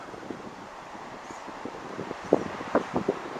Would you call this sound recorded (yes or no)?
no